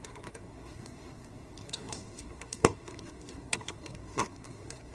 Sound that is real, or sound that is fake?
fake